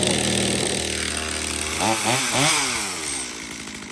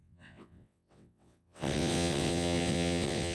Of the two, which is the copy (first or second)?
second